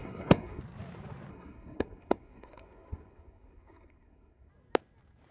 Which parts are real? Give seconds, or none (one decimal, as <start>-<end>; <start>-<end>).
0.6-1.3; 4.5-5.3